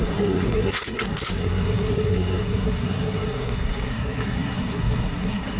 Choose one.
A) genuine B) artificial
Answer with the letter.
B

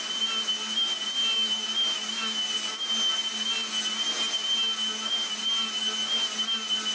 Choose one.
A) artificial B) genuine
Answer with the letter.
B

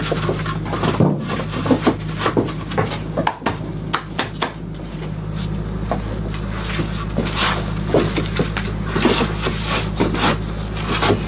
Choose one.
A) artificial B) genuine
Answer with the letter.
B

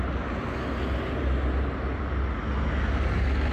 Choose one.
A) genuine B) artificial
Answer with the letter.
A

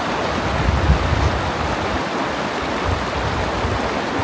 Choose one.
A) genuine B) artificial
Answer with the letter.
A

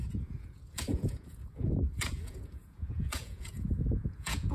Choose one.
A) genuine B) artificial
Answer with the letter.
B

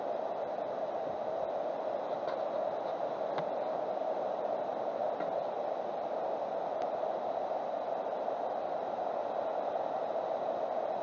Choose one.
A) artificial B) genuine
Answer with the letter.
B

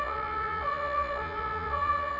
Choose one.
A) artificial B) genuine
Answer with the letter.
A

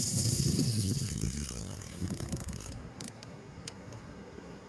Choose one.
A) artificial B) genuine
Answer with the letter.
A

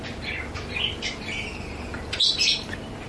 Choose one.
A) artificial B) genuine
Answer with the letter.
B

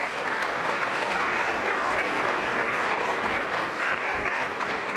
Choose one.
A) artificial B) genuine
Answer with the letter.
A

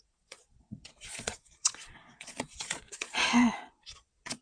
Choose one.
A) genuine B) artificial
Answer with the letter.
B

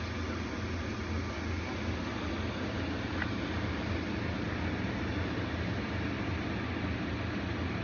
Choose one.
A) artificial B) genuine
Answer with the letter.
B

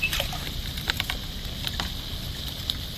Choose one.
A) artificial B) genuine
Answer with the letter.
B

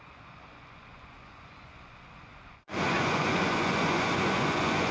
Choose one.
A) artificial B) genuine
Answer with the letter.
A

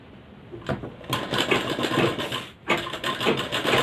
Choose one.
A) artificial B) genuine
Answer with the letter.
B